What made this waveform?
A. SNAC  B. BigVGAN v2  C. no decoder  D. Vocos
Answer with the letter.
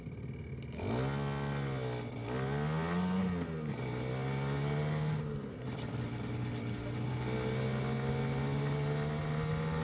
C